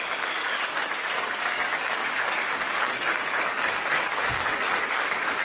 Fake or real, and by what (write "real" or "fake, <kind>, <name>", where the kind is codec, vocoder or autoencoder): fake, codec, DAC